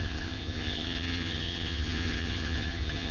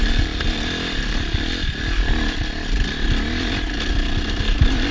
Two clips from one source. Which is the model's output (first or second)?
first